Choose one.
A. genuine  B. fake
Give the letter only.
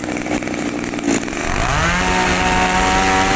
A